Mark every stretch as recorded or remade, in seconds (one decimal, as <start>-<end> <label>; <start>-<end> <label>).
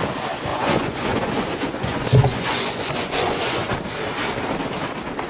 0.0-0.5 recorded; 0.5-3.7 remade; 3.7-5.3 recorded